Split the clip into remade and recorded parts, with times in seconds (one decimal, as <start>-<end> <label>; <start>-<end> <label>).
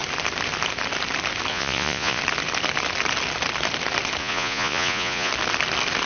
0.0-1.5 recorded; 1.5-2.2 remade; 2.2-4.2 recorded; 4.2-5.3 remade; 5.3-6.1 recorded